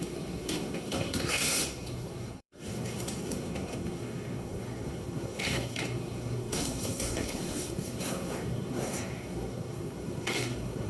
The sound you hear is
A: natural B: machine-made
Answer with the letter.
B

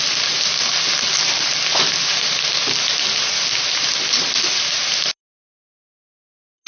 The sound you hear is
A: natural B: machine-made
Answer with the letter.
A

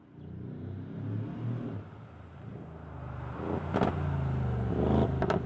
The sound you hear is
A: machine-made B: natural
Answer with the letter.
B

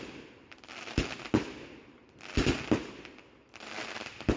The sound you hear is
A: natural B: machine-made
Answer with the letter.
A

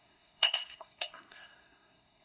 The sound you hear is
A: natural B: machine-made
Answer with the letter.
B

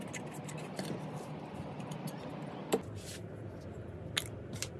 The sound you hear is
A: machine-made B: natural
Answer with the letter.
B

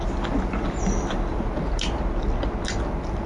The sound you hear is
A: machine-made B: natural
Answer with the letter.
B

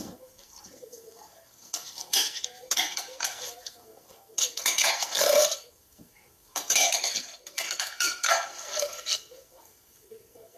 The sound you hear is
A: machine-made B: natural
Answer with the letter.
A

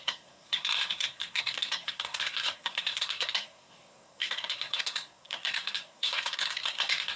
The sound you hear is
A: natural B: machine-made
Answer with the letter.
B